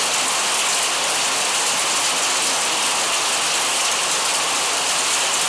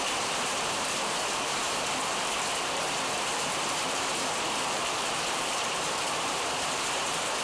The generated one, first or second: second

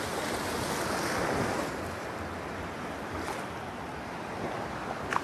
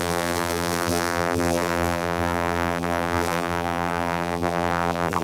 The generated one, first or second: second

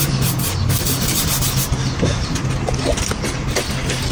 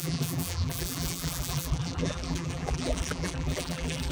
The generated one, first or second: second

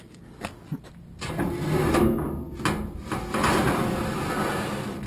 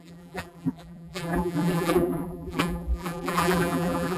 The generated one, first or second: second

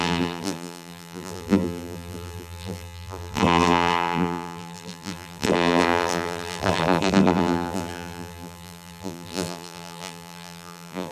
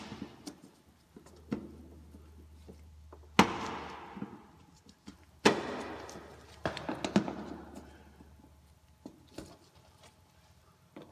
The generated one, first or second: first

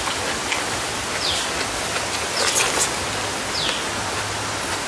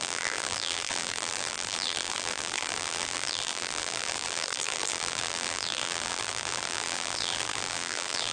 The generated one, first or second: second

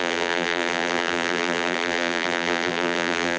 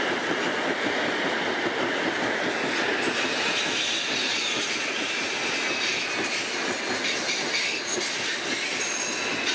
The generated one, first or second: first